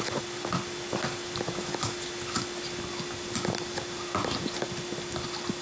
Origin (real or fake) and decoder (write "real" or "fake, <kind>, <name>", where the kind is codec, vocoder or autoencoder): real